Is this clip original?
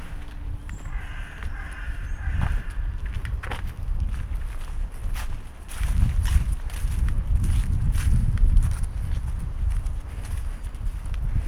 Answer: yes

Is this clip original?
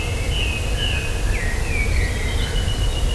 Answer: yes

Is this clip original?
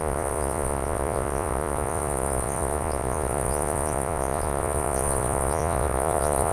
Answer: no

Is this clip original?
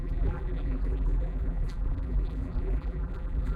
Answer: no